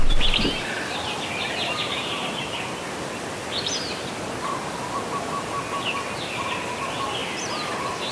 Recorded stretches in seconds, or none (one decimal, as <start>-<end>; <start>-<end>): 0.0-8.1